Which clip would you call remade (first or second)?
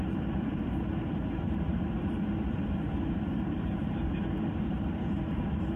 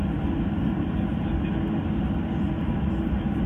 first